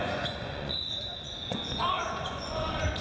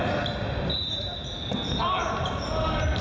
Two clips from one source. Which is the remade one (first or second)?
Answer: first